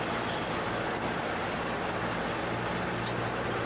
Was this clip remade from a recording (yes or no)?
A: no